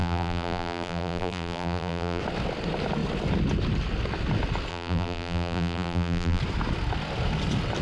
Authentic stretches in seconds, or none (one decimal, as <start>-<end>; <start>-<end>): 2.2-4.7; 6.4-7.8